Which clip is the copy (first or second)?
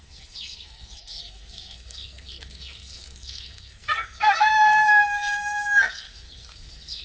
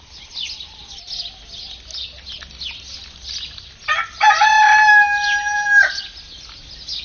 first